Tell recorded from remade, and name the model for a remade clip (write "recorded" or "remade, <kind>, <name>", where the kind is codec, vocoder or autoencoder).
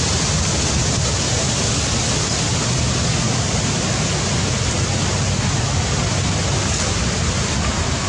recorded